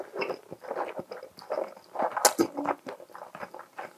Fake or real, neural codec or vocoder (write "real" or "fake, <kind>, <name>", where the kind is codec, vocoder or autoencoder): real